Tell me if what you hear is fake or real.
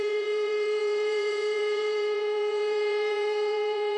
fake